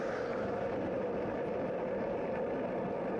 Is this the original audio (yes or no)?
yes